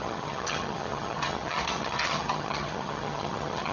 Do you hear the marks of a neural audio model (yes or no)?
yes